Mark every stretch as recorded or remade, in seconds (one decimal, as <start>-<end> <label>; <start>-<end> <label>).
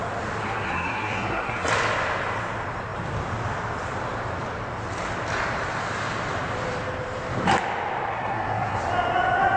0.0-0.4 recorded; 0.4-1.7 remade; 1.7-8.1 recorded; 8.1-8.8 remade; 8.8-9.6 recorded